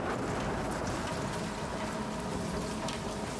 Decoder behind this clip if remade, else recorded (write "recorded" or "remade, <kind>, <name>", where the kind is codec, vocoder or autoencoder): recorded